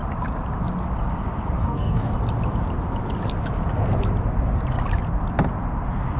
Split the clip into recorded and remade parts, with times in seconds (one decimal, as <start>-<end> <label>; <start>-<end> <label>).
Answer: 0.0-1.6 recorded; 1.6-2.1 remade; 2.1-6.2 recorded